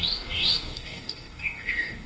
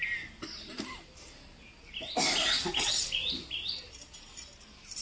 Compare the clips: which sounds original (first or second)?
second